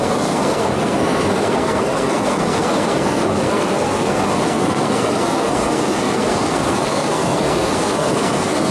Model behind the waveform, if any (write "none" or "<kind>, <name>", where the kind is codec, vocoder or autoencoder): codec, SNAC